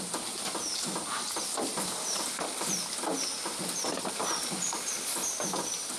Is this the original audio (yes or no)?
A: yes